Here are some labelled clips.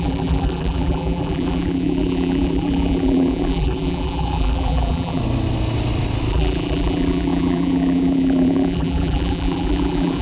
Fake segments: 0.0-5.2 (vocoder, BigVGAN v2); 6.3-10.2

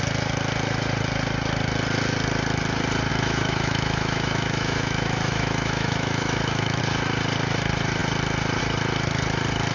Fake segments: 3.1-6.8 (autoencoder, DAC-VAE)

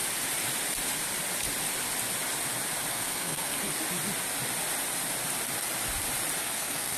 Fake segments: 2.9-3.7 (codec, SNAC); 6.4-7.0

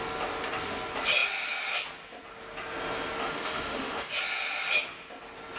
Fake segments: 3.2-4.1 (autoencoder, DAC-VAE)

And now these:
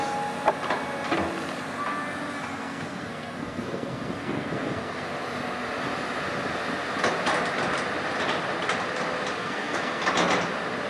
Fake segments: 2.6-5.1 (codec, SNAC); 9.4-10.0

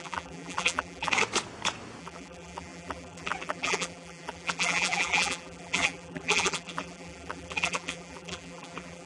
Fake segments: 0.0-1.1 (vocoder, BigVGAN v2); 2.0-9.1

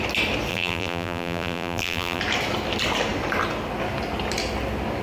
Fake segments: 0.5-2.2 (vocoder, BigVGAN v2)

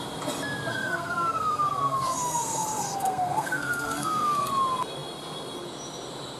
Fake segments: 0.7-4.5 (codec, SNAC)